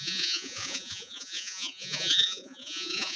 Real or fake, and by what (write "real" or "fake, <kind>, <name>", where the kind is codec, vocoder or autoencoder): fake, vocoder, Vocos